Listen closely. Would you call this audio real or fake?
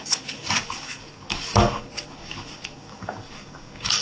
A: fake